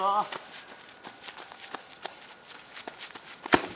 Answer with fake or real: real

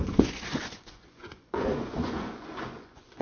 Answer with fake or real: fake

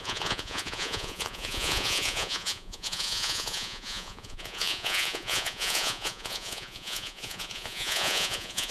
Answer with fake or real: fake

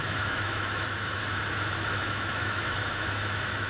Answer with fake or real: fake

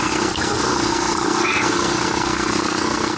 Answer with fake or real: fake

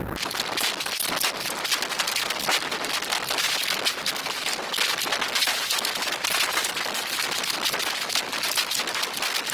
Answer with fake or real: real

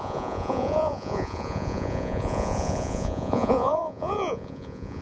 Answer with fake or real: fake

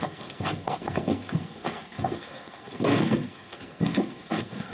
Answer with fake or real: fake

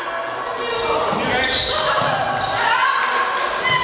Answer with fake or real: real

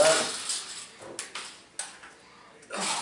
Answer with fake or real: real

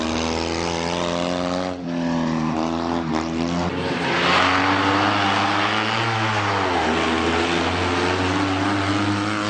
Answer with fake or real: real